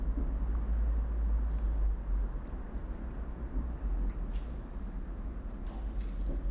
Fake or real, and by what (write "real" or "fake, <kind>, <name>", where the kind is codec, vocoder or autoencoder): real